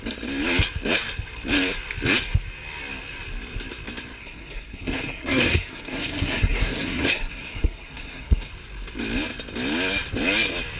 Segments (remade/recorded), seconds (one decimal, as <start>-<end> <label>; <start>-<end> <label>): 0.0-4.2 recorded; 4.2-8.5 remade; 8.5-10.8 recorded